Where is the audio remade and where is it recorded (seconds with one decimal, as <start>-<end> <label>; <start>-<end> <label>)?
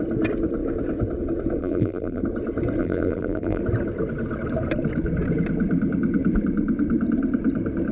0.0-1.6 recorded; 1.6-2.2 remade; 2.2-2.8 recorded; 2.8-3.6 remade; 3.6-7.9 recorded